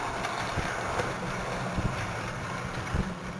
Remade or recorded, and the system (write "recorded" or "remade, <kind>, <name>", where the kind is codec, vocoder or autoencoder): recorded